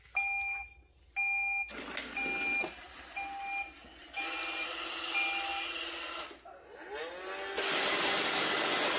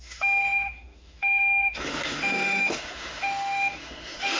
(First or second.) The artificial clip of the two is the second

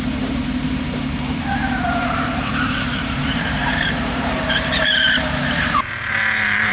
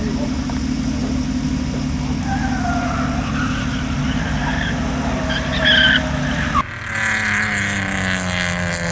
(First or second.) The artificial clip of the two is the first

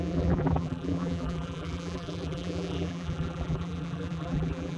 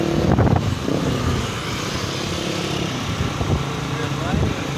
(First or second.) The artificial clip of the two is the first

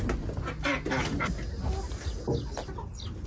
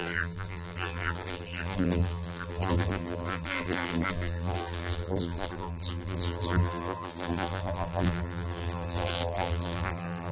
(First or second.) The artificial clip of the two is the second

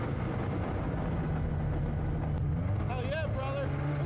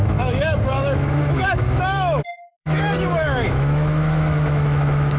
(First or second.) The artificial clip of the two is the second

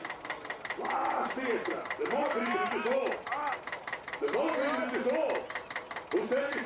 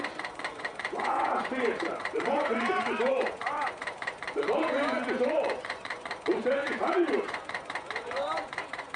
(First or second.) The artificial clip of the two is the second